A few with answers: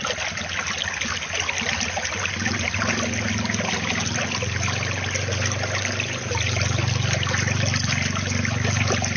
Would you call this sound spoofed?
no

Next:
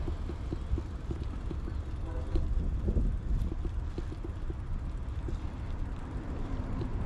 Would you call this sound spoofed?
no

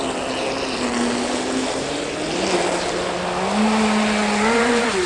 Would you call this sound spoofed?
no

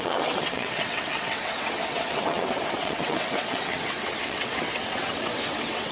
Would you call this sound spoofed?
yes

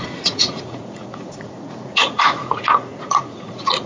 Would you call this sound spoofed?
yes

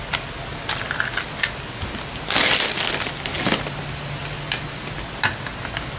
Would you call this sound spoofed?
no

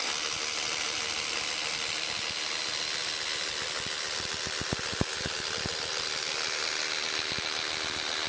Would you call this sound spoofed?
yes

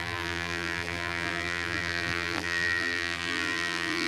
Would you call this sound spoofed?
yes